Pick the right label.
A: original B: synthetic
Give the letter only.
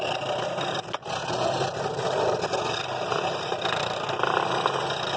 A